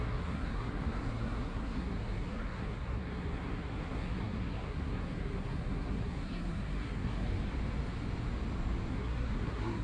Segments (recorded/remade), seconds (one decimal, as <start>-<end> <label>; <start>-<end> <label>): 0.0-7.3 remade; 7.3-8.9 recorded; 8.9-9.8 remade